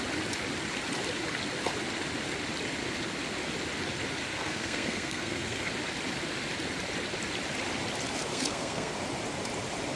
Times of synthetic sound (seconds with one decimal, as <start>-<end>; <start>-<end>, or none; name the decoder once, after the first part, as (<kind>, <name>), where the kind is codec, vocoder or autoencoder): 4.3-5.7 (codec, SNAC); 8.3-8.9